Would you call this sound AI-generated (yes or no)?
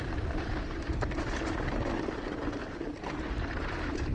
yes